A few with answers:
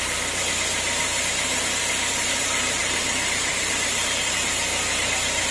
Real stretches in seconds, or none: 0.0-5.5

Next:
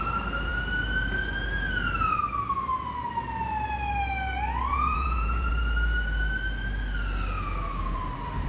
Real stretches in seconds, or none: 0.0-4.7; 5.5-8.5

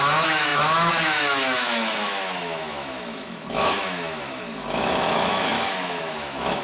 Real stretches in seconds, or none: none

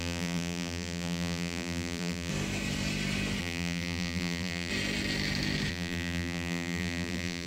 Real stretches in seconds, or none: 2.3-3.4; 4.7-5.7

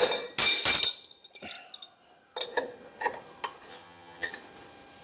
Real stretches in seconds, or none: 0.0-3.7; 4.3-5.0